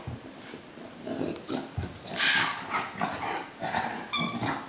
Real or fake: real